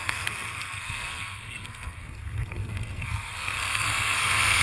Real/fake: fake